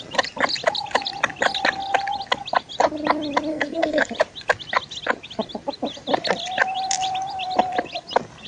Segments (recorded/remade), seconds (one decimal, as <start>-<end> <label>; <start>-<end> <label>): 0.0-3.5 recorded; 3.5-4.1 remade; 4.1-8.5 recorded